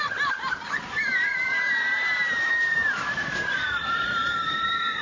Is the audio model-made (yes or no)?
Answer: yes